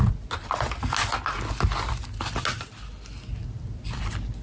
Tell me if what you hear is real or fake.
real